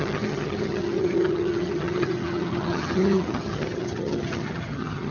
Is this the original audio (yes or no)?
no